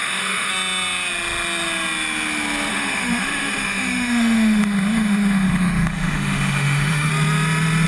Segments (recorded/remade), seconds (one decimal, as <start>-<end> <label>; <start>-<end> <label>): 0.0-0.5 remade; 0.5-2.7 recorded; 2.7-7.1 remade; 7.1-7.9 recorded